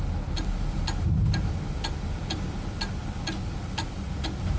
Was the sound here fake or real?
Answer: real